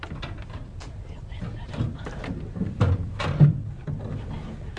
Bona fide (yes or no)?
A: yes